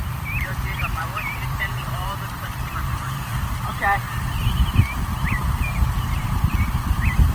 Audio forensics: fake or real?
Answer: fake